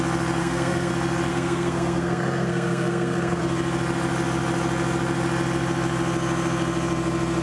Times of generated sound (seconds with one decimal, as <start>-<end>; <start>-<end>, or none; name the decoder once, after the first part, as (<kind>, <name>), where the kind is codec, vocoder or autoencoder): 0.4-0.9 (codec, SNAC); 1.3-3.4